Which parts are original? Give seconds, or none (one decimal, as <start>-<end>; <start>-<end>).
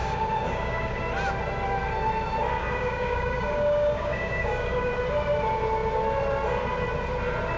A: 1.0-2.6; 4.9-7.6